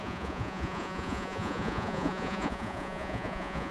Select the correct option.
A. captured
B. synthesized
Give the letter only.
B